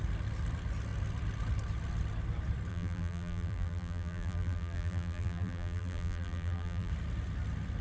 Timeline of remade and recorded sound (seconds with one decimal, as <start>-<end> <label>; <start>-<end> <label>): 0.0-2.7 recorded; 2.7-6.9 remade; 6.9-7.8 recorded